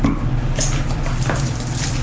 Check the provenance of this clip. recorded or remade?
remade